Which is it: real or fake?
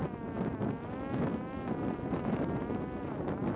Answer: real